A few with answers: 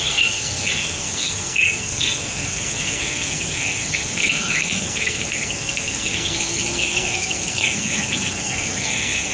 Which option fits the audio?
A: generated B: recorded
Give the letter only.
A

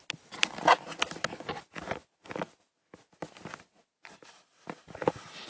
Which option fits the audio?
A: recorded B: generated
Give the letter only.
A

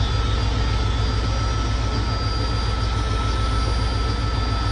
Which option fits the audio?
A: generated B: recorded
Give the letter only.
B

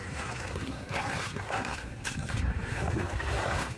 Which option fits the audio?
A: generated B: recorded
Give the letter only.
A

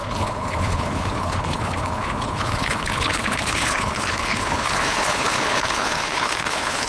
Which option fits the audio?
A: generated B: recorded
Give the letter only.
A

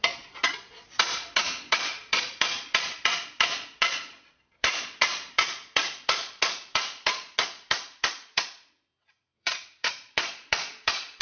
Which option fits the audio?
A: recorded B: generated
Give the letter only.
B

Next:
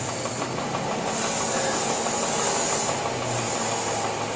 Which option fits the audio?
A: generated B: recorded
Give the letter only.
B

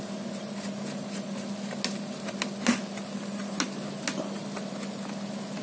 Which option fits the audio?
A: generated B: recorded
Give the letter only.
B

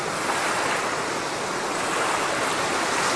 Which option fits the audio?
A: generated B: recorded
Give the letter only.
B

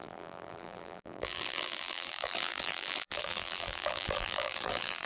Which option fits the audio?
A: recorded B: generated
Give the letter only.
B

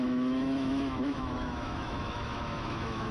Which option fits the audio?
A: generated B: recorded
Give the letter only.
A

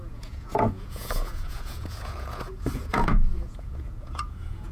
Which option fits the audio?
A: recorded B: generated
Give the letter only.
B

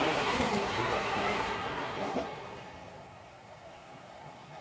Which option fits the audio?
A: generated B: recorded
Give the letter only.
A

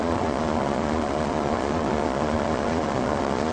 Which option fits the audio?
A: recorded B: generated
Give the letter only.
B